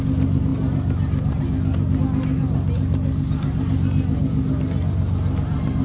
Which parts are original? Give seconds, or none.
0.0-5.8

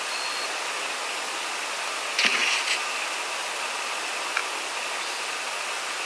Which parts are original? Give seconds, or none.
0.0-6.1

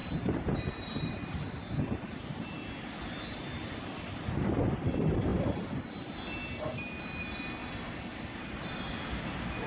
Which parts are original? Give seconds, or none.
0.0-7.6; 8.9-9.7

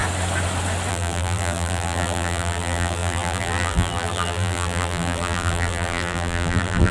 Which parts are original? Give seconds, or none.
0.0-0.9

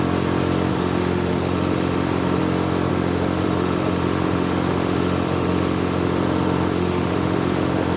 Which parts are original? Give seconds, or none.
0.0-0.7; 2.4-2.9

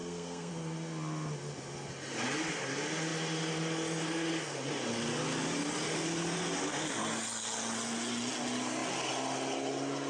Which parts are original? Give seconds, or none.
0.5-10.1

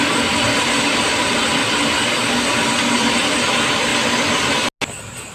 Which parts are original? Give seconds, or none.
0.0-5.3